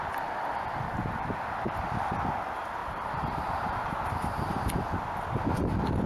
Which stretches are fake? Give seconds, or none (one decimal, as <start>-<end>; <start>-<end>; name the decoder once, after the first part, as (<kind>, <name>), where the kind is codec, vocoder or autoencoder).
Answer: 2.8-4.5 (vocoder, BigVGAN v2)